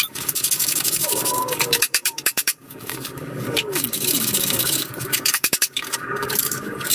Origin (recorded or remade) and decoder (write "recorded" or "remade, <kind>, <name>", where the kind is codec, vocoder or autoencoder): remade, codec, DAC